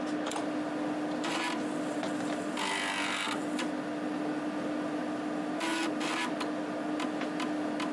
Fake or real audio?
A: real